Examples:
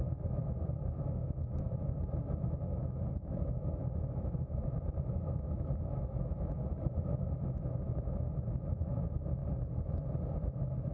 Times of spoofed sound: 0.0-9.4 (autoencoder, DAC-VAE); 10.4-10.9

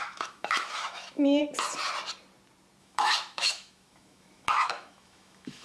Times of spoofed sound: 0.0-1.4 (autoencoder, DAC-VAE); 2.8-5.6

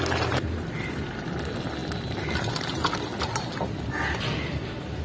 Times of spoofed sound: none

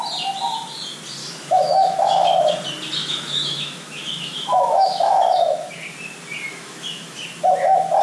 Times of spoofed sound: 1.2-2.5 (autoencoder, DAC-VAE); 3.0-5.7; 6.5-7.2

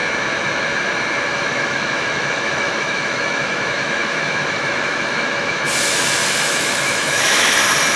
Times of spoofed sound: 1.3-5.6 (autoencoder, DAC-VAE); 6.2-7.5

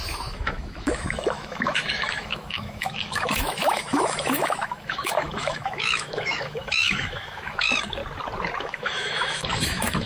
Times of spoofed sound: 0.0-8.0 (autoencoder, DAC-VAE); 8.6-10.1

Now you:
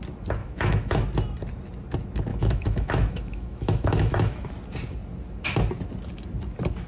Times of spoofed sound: 0.4-1.0 (autoencoder, DAC-VAE); 2.3-4.5

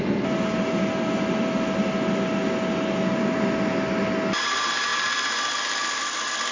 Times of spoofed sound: none